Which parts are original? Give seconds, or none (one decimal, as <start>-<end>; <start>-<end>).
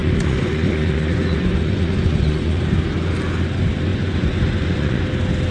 2.6-3.9; 5.0-5.5